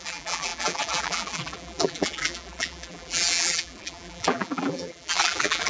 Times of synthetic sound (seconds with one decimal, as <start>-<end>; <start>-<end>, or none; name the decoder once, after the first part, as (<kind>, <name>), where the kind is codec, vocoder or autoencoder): 0.0-5.7 (vocoder, BigVGAN v2)